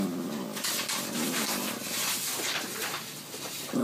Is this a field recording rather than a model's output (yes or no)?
yes